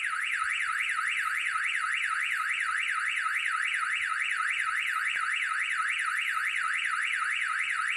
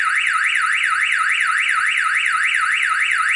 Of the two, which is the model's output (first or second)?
first